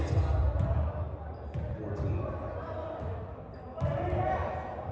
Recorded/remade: recorded